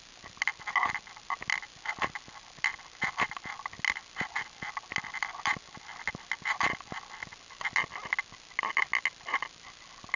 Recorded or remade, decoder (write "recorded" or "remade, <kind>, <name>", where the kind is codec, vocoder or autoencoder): recorded